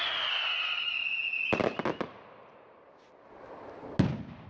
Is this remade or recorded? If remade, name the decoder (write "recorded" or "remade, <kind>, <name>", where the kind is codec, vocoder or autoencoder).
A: recorded